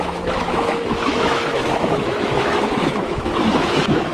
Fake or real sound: fake